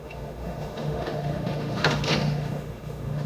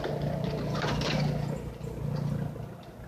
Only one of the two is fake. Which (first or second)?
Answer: first